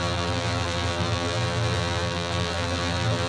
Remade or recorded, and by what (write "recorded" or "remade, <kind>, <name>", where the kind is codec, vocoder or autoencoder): remade, vocoder, BigVGAN v2